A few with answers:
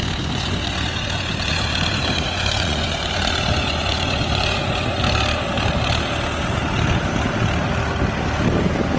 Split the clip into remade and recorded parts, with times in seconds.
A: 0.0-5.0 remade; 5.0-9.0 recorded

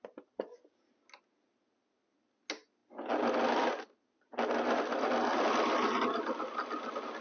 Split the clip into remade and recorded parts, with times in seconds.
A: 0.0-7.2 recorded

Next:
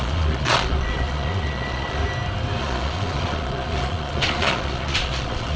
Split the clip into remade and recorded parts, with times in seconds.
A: 0.0-2.0 remade; 2.0-2.6 recorded; 2.6-5.6 remade